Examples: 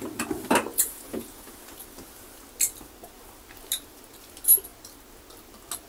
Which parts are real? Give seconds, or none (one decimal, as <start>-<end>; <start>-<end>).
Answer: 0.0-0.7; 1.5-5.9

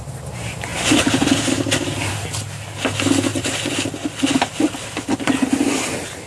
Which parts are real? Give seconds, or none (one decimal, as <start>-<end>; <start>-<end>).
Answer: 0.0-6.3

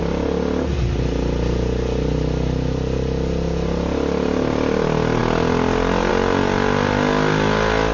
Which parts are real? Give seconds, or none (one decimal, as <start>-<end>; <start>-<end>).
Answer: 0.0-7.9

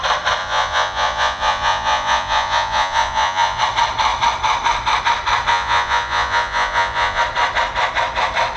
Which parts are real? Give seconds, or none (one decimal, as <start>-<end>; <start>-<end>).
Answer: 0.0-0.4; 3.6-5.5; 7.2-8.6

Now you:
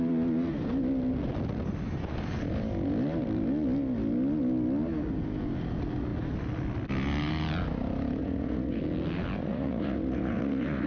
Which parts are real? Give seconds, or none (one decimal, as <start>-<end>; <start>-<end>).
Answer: 0.0-8.2; 8.8-9.4